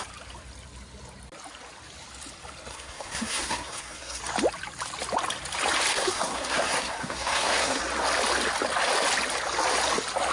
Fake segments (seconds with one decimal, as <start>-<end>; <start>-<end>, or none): 2.7-4.2; 5.9-7.8